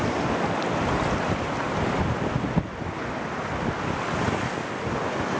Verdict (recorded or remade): recorded